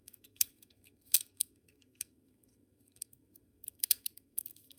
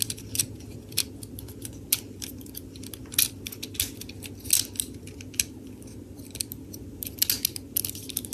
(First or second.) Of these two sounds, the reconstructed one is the first